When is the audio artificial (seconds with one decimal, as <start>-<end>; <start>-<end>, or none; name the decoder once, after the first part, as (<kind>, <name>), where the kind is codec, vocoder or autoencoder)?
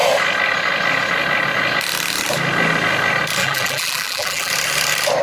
3.4-4.5 (vocoder, BigVGAN v2)